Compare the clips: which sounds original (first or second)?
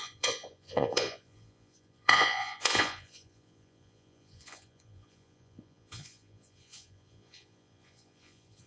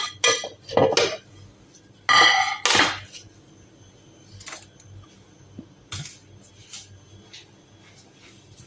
second